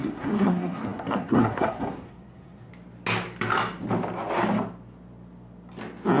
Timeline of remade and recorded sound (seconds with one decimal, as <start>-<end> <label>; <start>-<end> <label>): 0.0-2.7 remade; 2.7-6.2 recorded